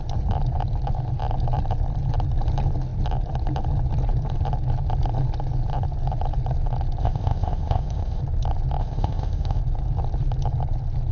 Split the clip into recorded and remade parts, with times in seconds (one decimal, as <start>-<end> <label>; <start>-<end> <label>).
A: 0.0-7.0 recorded; 7.0-8.2 remade; 8.2-8.8 recorded; 8.8-9.6 remade; 9.6-11.1 recorded